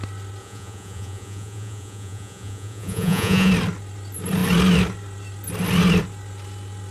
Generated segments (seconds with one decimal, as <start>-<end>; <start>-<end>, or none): 0.4-3.5